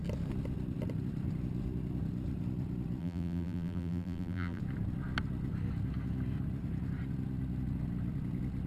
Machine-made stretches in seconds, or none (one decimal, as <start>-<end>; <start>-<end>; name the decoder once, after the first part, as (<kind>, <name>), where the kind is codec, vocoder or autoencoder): 3.0-4.6 (vocoder, BigVGAN v2)